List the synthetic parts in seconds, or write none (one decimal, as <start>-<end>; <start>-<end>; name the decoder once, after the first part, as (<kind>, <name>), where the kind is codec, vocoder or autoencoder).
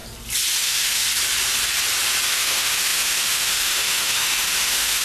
0.6-1.0 (autoencoder, DAC-VAE); 2.3-5.0